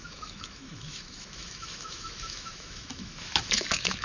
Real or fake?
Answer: fake